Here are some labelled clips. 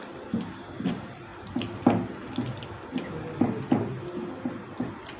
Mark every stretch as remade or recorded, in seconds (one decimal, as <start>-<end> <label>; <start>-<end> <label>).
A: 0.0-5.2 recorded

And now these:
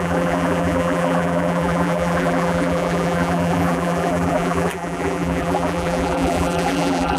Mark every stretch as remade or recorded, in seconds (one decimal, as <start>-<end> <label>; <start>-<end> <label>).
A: 0.0-7.2 remade

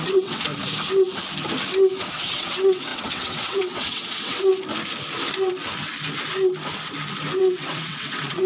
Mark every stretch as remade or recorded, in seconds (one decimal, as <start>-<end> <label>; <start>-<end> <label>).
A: 0.0-0.5 remade; 0.5-2.1 recorded; 2.1-4.5 remade; 4.5-7.4 recorded; 7.4-8.5 remade

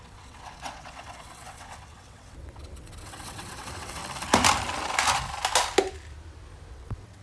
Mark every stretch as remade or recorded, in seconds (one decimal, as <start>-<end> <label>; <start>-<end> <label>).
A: 0.0-4.0 remade; 4.0-6.7 recorded; 6.7-7.2 remade

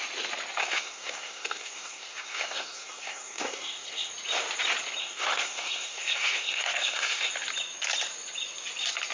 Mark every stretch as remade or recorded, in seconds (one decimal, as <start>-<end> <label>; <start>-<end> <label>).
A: 0.0-0.6 recorded; 0.6-4.1 remade; 4.1-5.0 recorded; 5.0-7.3 remade; 7.3-9.1 recorded

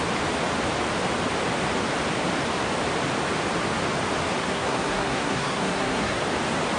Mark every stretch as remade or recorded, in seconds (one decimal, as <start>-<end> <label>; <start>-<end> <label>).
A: 0.0-4.4 recorded; 4.4-6.2 remade; 6.2-6.8 recorded

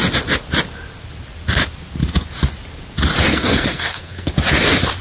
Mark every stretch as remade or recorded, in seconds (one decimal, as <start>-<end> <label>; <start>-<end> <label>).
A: 0.0-3.3 recorded; 3.3-4.3 remade; 4.3-5.0 recorded